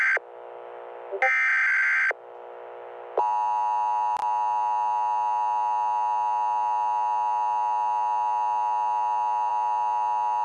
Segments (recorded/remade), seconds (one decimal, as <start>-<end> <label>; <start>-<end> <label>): 0.0-10.4 recorded